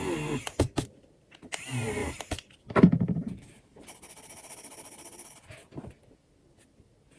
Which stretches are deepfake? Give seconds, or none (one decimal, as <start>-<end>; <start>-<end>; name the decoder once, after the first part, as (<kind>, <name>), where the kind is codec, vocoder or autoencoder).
2.0-6.3 (vocoder, BigVGAN v2)

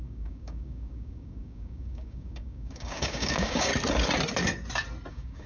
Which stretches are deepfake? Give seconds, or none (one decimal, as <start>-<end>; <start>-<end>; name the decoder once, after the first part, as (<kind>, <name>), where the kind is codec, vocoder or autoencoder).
0.0-3.7 (codec, DAC); 5.1-5.5

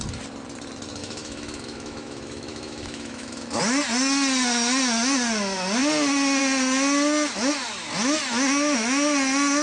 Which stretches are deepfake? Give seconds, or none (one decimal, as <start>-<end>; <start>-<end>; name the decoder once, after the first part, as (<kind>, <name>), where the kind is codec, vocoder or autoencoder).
1.0-3.6 (autoencoder, DAC-VAE)

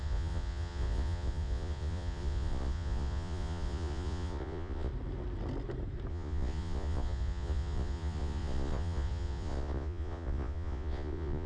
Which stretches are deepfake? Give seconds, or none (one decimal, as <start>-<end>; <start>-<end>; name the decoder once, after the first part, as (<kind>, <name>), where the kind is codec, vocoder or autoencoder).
0.0-4.9 (vocoder, Vocos); 6.1-11.5

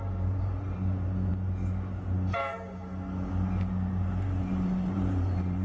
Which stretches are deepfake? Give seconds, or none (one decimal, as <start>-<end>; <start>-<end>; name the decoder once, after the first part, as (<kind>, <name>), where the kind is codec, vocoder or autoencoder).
0.0-1.3 (vocoder, BigVGAN v2); 3.9-5.6